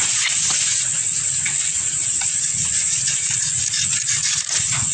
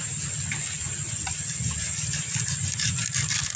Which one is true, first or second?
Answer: second